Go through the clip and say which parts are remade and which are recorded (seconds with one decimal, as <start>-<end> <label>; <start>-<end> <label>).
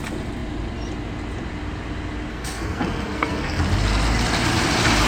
0.0-2.3 recorded; 2.3-3.6 remade; 3.6-5.1 recorded